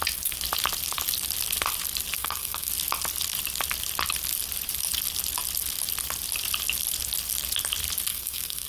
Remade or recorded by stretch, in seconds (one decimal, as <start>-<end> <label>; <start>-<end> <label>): 0.0-2.2 recorded; 2.2-2.7 remade; 2.7-8.1 recorded; 8.1-8.7 remade